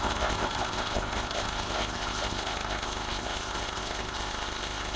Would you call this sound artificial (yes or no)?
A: yes